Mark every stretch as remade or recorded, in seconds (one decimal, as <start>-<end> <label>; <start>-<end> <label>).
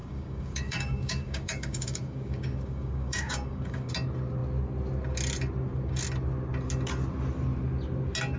0.0-3.9 remade; 3.9-8.4 recorded